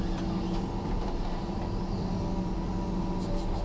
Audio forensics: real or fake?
real